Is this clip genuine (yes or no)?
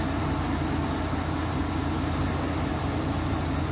yes